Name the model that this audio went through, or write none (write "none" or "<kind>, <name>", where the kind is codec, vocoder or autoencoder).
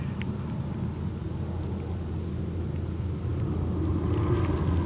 none